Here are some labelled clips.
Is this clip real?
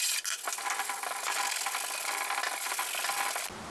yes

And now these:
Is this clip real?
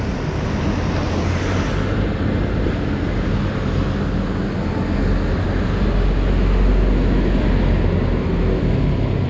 yes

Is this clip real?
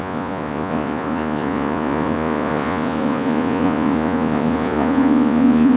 no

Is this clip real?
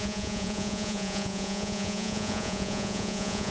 no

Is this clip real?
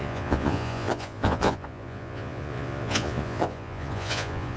no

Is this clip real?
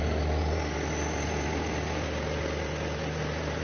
yes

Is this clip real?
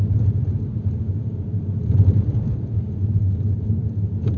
yes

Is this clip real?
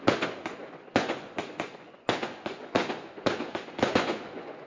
no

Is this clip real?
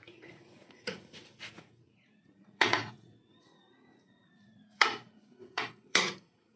no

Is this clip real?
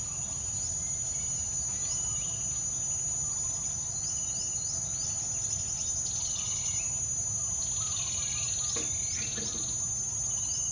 yes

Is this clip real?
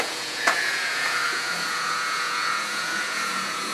no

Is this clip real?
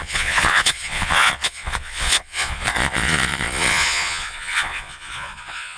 no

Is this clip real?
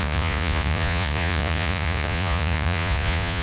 no